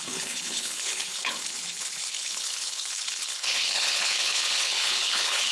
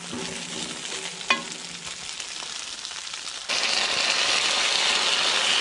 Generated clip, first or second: first